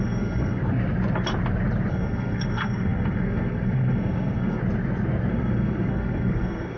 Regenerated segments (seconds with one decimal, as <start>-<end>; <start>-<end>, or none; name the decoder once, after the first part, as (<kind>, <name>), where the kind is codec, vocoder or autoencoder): 0.0-0.6 (codec, SNAC); 1.9-4.6; 5.3-6.8